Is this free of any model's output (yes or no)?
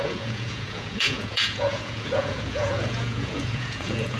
no